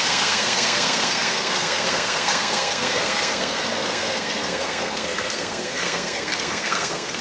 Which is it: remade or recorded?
remade